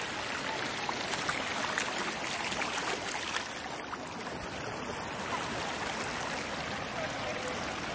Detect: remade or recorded recorded